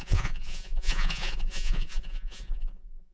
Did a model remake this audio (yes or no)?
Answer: yes